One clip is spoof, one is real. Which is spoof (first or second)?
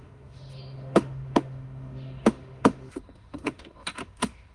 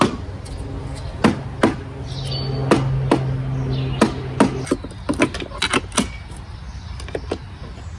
first